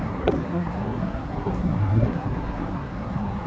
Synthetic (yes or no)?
yes